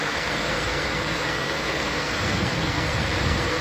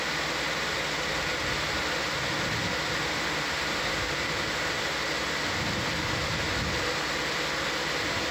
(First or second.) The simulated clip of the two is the first